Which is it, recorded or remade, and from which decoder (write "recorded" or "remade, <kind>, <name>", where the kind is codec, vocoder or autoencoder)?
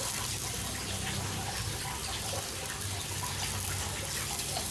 recorded